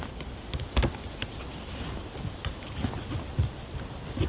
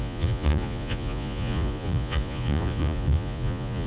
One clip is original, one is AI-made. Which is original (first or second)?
first